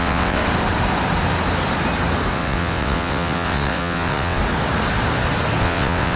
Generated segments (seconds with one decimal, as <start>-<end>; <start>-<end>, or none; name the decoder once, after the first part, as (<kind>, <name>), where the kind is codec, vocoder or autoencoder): 0.0-0.4 (vocoder, WaveNeXt); 2.3-4.4; 5.6-6.2